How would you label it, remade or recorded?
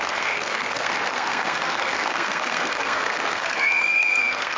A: remade